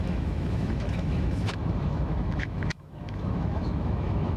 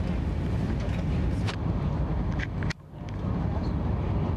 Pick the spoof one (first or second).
first